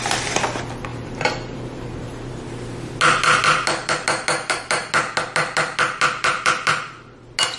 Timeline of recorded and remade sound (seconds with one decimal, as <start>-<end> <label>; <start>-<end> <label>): 0.0-0.9 recorded; 0.9-2.3 remade; 2.3-7.6 recorded